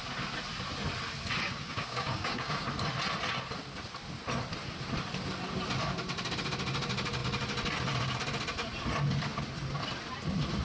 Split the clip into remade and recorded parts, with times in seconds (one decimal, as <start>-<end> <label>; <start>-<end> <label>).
0.0-1.6 recorded; 1.6-2.7 remade; 2.7-10.6 recorded